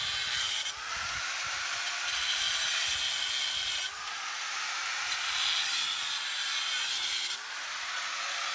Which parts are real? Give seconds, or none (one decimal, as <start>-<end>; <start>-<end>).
0.0-4.9; 5.6-8.5